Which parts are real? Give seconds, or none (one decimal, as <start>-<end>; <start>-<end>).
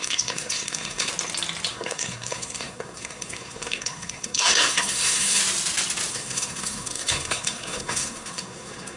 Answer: 1.1-1.7; 5.4-6.1